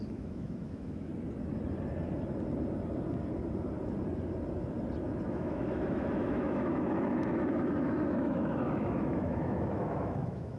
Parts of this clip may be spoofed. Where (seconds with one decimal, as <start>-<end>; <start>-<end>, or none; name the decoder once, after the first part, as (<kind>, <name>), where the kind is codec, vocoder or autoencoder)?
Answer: 0.0-1.1 (autoencoder, DAC-VAE); 5.3-10.6